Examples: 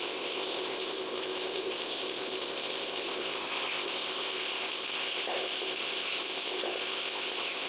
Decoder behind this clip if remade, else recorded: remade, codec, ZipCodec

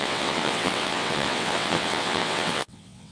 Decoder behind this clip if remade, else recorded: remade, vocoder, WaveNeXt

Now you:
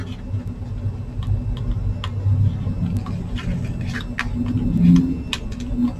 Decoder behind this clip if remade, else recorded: recorded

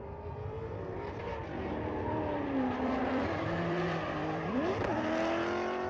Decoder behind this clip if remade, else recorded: remade, vocoder, BigVGAN v2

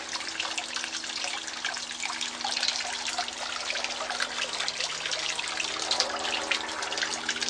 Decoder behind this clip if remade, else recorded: recorded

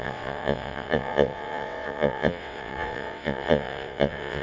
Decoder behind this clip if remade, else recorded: remade, vocoder, WaveNeXt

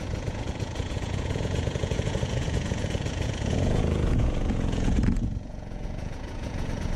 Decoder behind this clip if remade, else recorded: remade, vocoder, Vocos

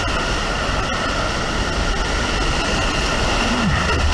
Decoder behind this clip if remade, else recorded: recorded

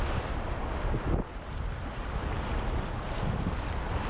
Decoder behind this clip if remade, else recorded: recorded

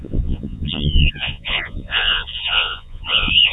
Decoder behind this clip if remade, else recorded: remade, vocoder, Vocos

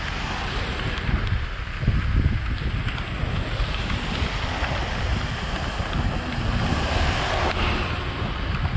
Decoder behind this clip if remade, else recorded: recorded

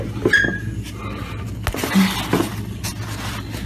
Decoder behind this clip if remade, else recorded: recorded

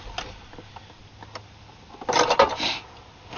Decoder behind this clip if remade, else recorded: recorded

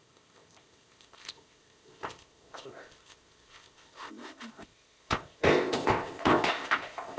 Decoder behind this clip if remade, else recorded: remade, codec, ZipCodec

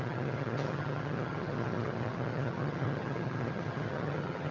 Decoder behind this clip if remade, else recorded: remade, vocoder, HiFi-GAN